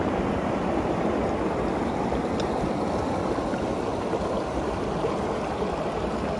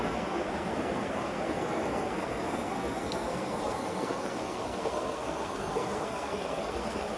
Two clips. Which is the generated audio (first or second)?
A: second